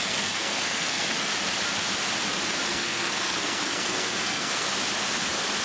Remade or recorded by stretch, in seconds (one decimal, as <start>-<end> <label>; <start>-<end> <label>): 0.0-1.3 remade; 1.3-2.7 recorded; 2.7-4.7 remade; 4.7-5.6 recorded